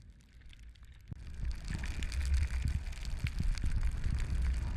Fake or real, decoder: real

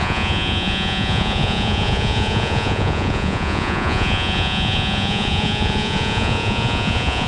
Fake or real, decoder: fake, vocoder, Vocos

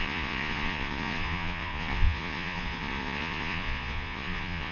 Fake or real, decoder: fake, vocoder, Vocos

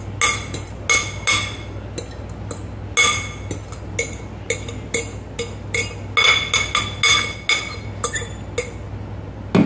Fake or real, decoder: real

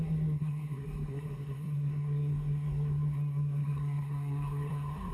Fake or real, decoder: fake, codec, SNAC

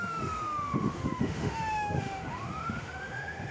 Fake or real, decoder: fake, autoencoder, DAC-VAE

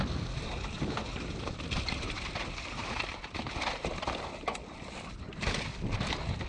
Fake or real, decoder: fake, vocoder, BigVGAN v2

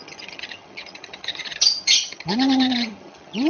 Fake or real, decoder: fake, vocoder, HiFi-GAN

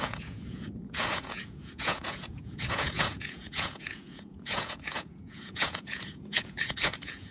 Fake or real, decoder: fake, vocoder, Vocos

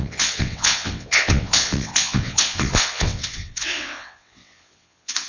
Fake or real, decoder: fake, vocoder, WaveNeXt